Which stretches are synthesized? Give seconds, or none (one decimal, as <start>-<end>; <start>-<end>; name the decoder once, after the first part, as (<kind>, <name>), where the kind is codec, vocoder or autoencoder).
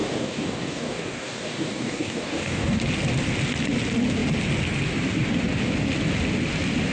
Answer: 0.0-2.8 (codec, DAC)